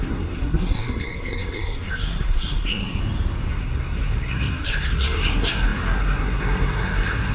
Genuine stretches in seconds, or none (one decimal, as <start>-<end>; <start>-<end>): 3.0-3.5